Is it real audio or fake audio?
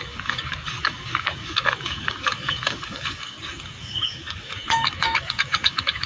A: fake